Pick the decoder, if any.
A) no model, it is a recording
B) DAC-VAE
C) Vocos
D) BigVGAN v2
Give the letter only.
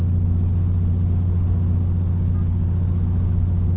A